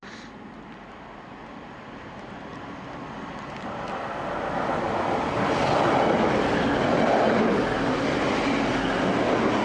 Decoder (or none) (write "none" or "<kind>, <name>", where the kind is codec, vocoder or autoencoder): none